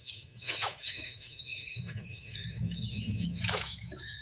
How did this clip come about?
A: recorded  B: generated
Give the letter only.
B